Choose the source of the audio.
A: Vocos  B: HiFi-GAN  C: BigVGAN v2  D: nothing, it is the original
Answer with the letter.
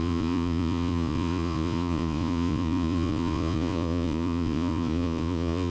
A